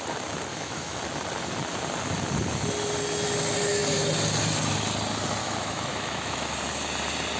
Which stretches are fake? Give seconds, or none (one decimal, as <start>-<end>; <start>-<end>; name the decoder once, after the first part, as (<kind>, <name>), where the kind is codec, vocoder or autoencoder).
0.5-1.0 (autoencoder, DAC-VAE); 5.4-6.5

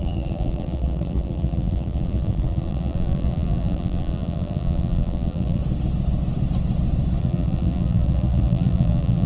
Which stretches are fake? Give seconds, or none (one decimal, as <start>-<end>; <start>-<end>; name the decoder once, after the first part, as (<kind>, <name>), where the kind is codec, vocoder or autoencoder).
0.0-5.6 (vocoder, BigVGAN v2); 7.2-9.3

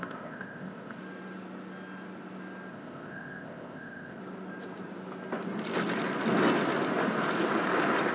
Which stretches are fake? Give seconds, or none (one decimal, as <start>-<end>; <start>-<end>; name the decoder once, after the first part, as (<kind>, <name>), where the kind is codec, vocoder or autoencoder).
0.0-1.0 (codec, ZipCodec); 2.7-4.2

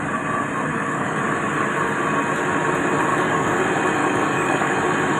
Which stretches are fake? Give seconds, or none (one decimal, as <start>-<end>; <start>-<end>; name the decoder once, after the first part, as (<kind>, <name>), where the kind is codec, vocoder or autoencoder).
0.7-1.2 (codec, DAC); 3.1-3.6; 4.0-4.8

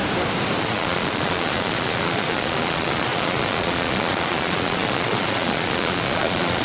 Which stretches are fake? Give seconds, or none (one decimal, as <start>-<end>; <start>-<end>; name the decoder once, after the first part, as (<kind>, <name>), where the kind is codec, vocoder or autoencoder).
0.6-6.6 (vocoder, Vocos)

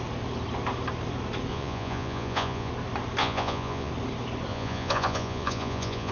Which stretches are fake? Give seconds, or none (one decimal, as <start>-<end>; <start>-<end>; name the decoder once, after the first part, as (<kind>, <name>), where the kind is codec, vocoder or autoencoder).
1.5-2.7 (vocoder, Vocos); 3.2-3.9; 4.5-6.1